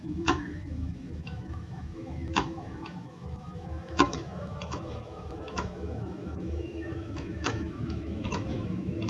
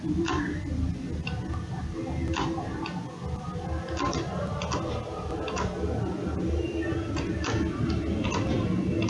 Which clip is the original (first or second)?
second